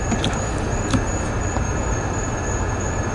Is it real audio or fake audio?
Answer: real